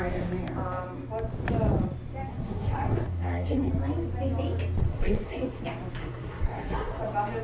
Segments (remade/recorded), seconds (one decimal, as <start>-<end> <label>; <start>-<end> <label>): 0.0-2.3 recorded; 2.3-3.7 remade; 3.7-4.8 recorded; 4.8-5.6 remade; 5.6-6.0 recorded; 6.0-7.0 remade; 7.0-7.4 recorded